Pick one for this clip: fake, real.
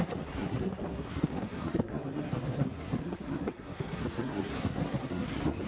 fake